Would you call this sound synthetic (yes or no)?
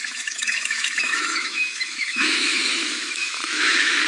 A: yes